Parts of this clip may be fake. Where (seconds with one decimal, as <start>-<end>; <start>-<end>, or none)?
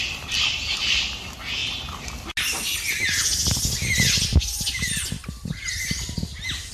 none